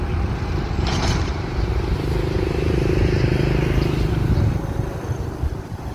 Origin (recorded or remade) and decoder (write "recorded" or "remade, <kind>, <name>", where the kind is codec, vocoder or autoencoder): remade, vocoder, BigVGAN v2